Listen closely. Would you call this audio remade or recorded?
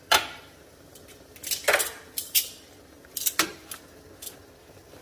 recorded